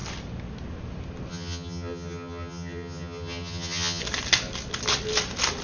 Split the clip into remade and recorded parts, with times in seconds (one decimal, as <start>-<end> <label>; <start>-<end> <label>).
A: 0.0-1.3 recorded; 1.3-4.0 remade; 4.0-5.6 recorded